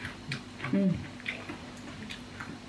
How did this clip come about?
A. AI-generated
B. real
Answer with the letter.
B